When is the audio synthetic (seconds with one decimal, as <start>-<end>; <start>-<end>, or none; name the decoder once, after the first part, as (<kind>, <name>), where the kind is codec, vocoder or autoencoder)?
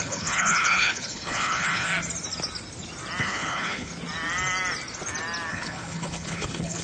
0.0-1.9 (codec, HILCodec); 3.2-3.9; 5.5-6.8